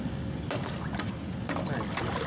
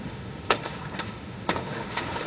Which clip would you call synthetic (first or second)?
second